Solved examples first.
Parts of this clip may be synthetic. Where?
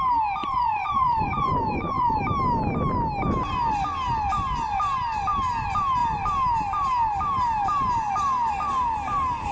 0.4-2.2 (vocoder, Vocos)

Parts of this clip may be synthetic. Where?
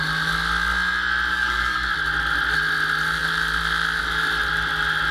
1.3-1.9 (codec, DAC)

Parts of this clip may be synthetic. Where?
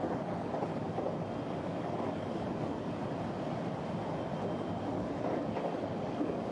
0.0-0.7 (codec, DAC); 1.6-3.0; 4.8-6.5